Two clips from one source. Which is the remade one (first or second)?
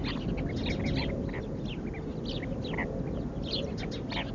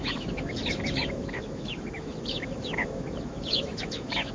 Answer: second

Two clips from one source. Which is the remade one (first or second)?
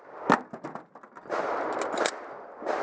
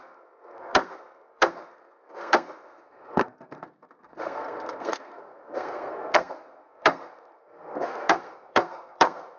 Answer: second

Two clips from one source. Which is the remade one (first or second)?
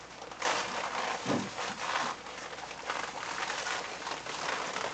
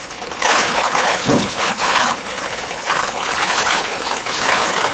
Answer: second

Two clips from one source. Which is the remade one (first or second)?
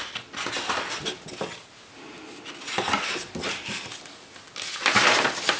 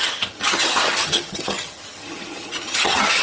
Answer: second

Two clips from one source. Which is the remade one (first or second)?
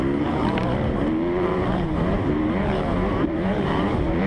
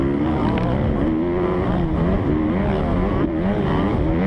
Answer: first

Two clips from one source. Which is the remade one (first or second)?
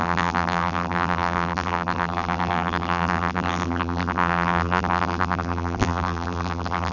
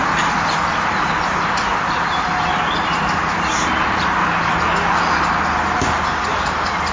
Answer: first